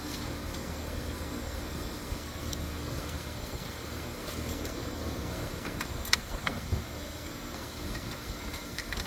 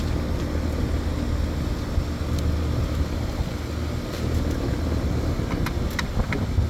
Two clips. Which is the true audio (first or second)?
second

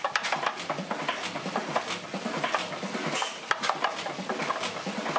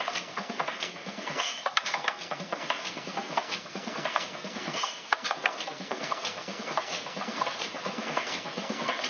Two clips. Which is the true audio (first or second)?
first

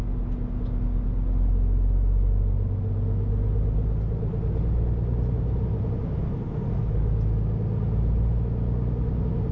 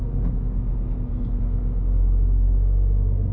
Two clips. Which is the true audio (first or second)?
first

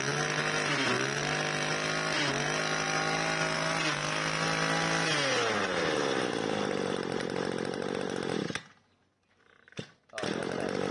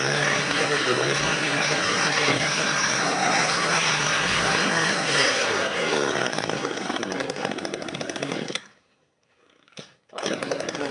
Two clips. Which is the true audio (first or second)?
first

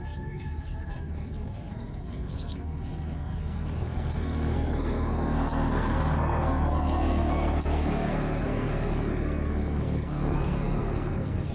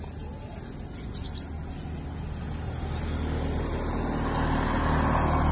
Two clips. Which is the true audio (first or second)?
second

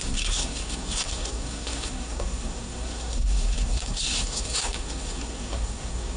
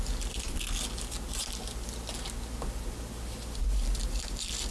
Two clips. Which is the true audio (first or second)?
second